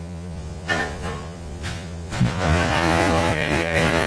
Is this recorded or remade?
remade